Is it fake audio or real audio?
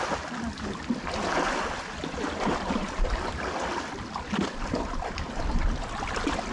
real